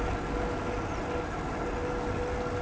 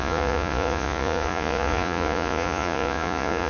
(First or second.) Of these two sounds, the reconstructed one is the second